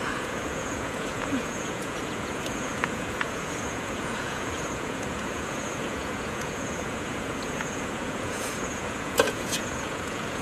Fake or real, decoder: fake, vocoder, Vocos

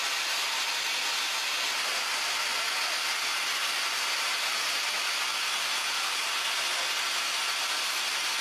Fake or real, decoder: real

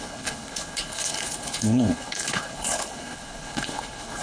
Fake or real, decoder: fake, codec, HILCodec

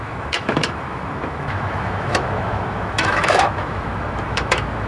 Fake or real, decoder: fake, autoencoder, DAC-VAE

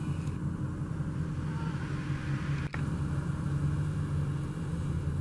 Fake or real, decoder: real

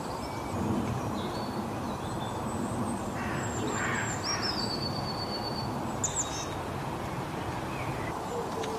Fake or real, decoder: real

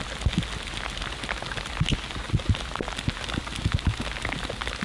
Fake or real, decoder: real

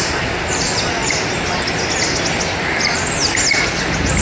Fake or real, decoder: real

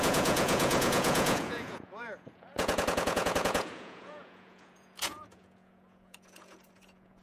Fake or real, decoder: fake, vocoder, Vocos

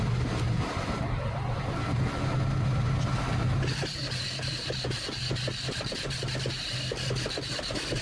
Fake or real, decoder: real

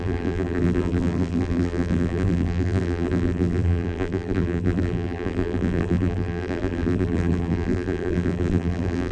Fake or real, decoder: fake, vocoder, BigVGAN v2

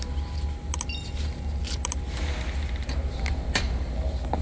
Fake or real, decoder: real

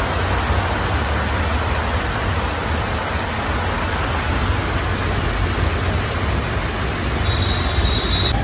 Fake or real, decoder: real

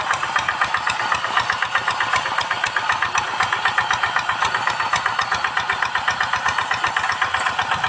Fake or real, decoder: real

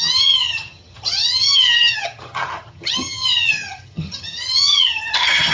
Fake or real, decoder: fake, vocoder, HiFi-GAN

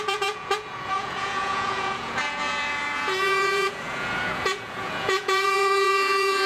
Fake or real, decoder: fake, vocoder, Vocos